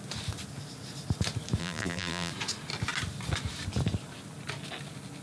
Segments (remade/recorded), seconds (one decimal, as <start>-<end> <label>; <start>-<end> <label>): 0.0-1.6 recorded; 1.6-2.3 remade; 2.3-5.2 recorded